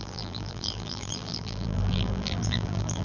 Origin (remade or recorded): remade